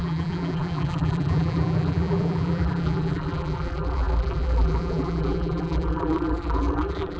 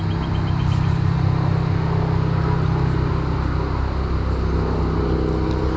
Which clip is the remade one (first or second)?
first